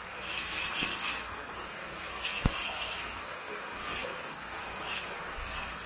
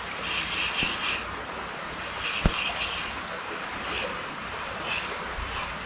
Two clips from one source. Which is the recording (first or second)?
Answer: second